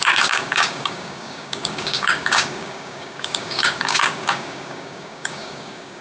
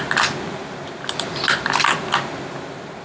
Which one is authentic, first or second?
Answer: second